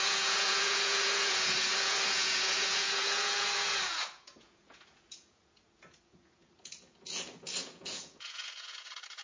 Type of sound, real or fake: fake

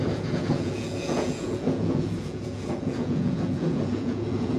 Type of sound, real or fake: fake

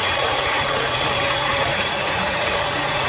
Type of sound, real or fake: fake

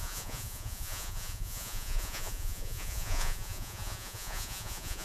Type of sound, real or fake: fake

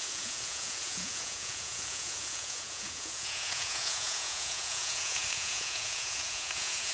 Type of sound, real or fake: fake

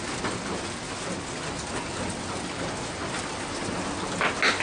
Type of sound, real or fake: real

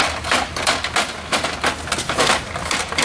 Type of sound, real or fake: real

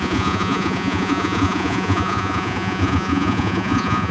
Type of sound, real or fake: fake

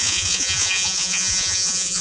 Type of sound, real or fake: fake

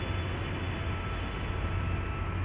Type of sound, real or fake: real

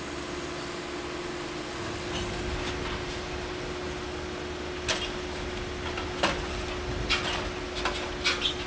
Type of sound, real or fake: real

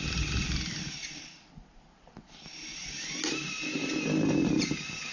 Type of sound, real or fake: real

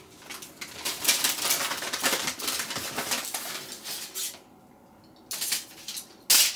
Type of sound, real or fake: real